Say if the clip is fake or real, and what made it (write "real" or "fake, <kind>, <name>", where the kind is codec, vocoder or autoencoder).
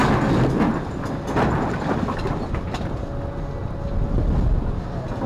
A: real